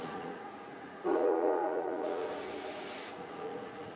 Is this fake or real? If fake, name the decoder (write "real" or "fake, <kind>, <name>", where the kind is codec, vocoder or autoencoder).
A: fake, vocoder, Vocos